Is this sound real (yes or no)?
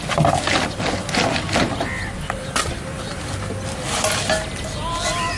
yes